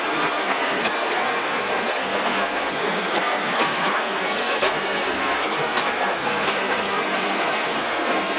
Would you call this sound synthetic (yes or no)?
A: yes